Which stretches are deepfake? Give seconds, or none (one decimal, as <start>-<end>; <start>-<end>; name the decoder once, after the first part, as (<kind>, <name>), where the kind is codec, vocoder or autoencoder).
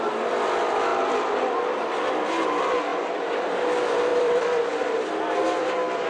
4.1-5.1 (vocoder, BigVGAN v2)